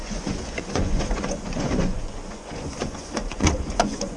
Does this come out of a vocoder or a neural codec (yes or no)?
yes